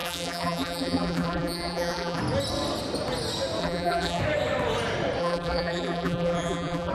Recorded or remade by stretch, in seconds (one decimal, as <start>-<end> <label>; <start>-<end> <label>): 0.0-2.2 remade; 2.2-3.6 recorded; 3.6-4.2 remade; 4.2-5.2 recorded; 5.2-6.9 remade